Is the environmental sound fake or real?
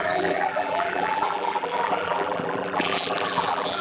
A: fake